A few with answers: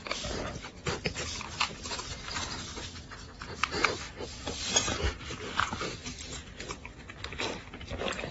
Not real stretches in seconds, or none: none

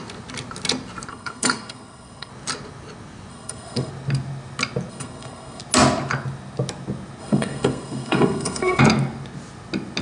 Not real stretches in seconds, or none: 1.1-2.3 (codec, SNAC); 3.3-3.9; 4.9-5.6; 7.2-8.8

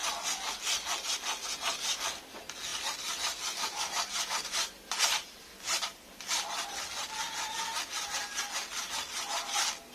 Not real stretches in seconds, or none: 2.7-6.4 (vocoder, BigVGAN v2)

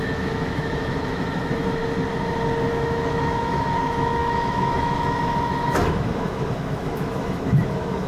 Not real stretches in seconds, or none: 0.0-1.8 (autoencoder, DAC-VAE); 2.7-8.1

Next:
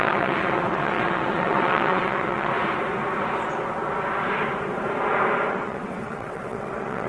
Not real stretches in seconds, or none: 0.0-2.5 (vocoder, WaveNeXt); 5.5-7.1